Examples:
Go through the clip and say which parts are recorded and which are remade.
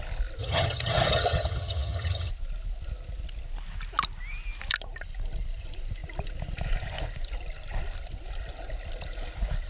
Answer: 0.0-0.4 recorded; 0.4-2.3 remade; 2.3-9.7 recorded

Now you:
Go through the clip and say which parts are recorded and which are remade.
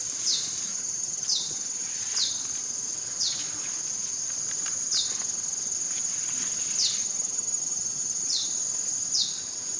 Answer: 0.0-0.7 recorded; 0.7-2.0 remade; 2.0-7.0 recorded; 7.0-8.5 remade; 8.5-9.8 recorded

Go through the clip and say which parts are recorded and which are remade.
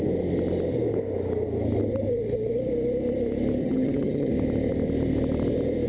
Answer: 0.0-3.6 recorded; 3.6-4.3 remade; 4.3-5.9 recorded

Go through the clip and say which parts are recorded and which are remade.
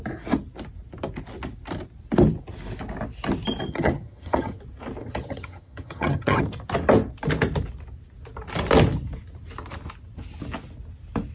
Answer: 0.0-3.7 recorded; 3.7-4.6 remade; 4.6-5.0 recorded; 5.0-6.4 remade; 6.4-11.3 recorded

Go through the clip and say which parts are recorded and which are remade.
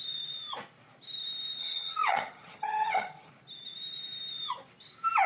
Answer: 0.0-1.6 recorded; 1.6-3.3 remade; 3.3-5.3 recorded